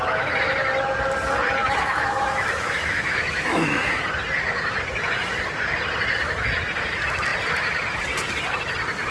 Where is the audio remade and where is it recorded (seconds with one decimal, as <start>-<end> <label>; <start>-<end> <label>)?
0.0-1.6 recorded; 1.6-4.0 remade; 4.0-9.1 recorded